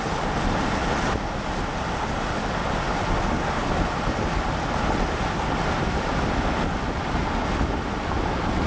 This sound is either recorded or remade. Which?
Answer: recorded